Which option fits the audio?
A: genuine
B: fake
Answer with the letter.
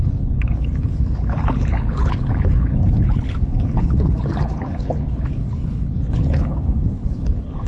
B